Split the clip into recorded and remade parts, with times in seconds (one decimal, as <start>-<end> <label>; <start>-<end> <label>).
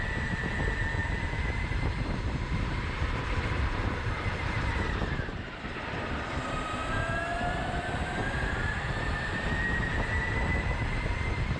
0.0-1.0 recorded; 1.0-4.2 remade; 4.2-11.6 recorded